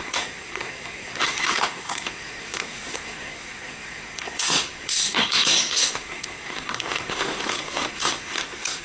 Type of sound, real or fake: fake